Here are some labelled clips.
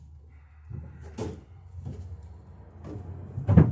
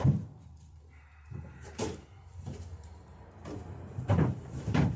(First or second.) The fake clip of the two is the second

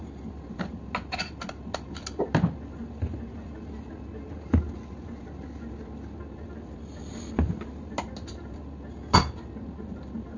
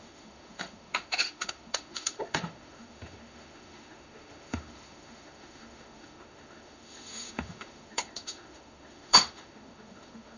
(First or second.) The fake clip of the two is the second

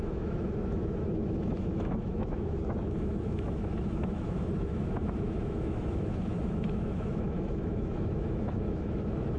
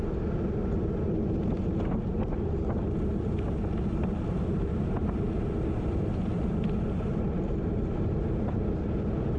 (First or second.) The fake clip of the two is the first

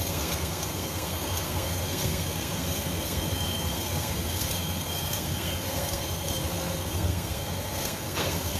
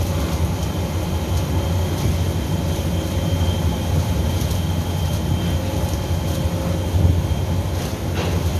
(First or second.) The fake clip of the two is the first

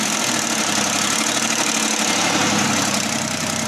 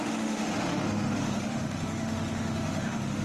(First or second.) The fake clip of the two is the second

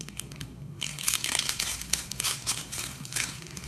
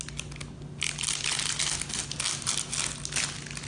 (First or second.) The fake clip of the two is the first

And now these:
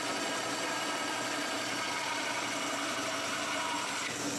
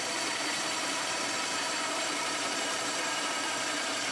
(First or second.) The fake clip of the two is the second